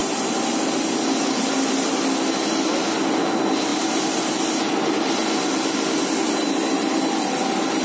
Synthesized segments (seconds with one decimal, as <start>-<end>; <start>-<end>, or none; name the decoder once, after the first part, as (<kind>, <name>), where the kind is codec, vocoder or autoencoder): none